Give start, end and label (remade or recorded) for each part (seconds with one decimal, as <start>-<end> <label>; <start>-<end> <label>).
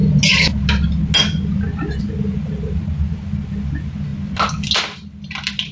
0.0-5.7 recorded